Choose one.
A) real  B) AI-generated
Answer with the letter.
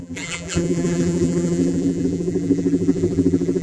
B